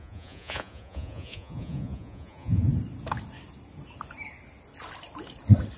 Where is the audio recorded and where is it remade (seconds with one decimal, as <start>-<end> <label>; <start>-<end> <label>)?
0.0-2.7 remade; 2.7-5.8 recorded